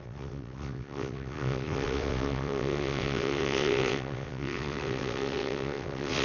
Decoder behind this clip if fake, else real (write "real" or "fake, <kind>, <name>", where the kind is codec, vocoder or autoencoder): fake, vocoder, WaveNeXt